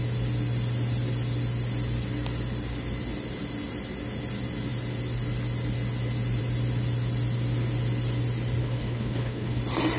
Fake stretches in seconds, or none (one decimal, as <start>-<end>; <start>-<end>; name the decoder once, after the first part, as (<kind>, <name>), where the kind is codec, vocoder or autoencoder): 8.6-9.6 (codec, HILCodec)